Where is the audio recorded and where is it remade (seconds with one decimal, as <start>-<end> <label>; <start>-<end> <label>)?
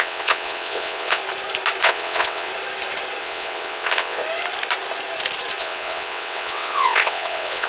0.0-1.2 remade; 1.2-1.8 recorded; 1.8-2.5 remade; 2.5-3.2 recorded; 3.2-4.2 remade; 4.2-5.6 recorded; 5.6-7.7 remade